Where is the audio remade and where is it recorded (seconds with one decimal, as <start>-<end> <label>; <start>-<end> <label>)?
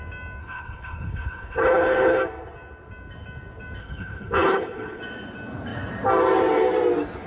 0.0-0.4 recorded; 0.4-2.2 remade; 2.2-3.8 recorded; 3.8-5.0 remade; 5.0-7.3 recorded